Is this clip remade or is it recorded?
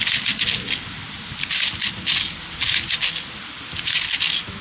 recorded